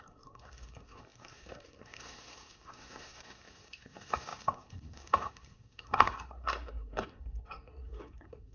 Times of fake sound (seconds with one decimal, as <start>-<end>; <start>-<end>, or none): 0.0-8.5